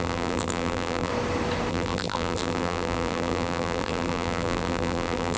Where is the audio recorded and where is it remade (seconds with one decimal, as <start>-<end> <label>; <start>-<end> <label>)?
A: 0.0-1.1 remade; 1.1-1.7 recorded; 1.7-5.4 remade